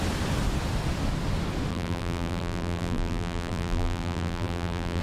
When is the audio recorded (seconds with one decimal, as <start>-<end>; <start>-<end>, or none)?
0.0-1.7